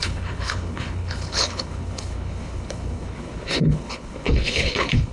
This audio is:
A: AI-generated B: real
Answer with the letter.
A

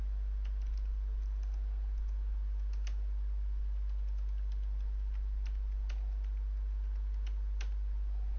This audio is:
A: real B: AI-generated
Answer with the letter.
A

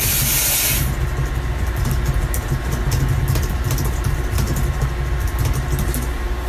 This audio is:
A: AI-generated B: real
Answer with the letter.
B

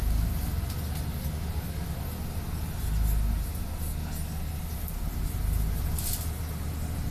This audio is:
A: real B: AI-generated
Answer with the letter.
A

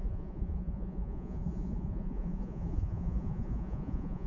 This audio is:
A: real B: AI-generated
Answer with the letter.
B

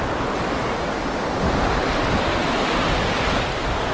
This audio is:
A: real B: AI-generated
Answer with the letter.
A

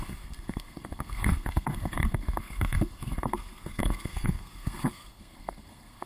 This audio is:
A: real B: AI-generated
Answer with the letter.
B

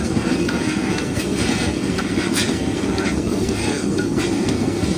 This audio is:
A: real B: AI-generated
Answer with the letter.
B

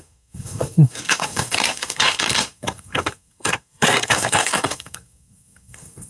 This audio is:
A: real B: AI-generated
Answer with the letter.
B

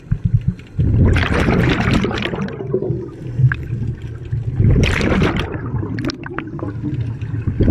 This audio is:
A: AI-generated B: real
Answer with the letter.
B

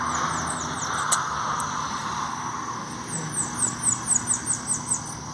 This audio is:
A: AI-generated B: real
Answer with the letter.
B